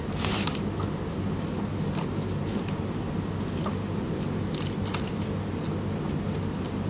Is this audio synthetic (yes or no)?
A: no